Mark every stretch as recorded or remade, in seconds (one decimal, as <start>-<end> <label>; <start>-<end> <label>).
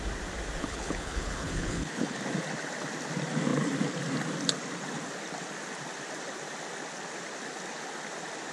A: 0.0-0.6 recorded; 0.6-2.2 remade; 2.2-8.5 recorded